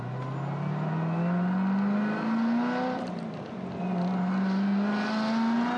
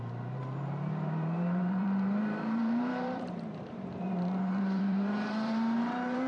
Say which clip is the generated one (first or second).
second